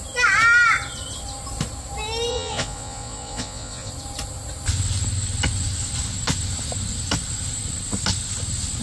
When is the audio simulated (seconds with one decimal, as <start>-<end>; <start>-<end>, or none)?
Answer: 2.3-3.9